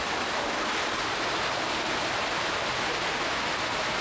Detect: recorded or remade recorded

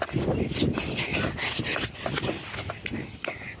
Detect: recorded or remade recorded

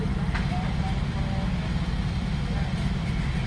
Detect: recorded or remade recorded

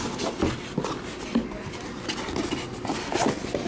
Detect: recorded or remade recorded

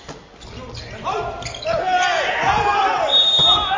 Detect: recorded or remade recorded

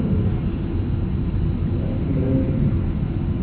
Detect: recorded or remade recorded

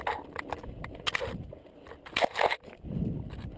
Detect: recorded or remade recorded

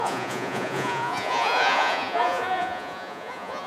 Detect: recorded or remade remade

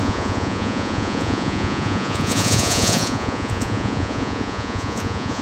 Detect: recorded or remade remade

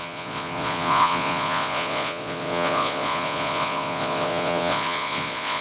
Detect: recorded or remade remade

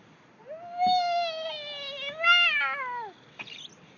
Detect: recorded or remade recorded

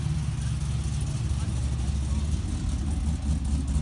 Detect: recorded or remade recorded